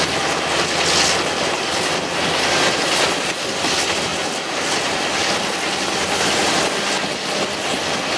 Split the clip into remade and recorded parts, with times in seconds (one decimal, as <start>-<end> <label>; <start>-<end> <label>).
0.0-8.2 recorded